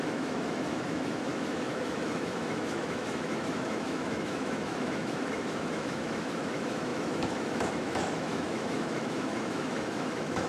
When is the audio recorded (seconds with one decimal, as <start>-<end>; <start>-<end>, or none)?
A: none